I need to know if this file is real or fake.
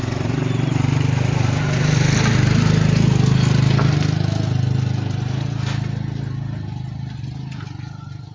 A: real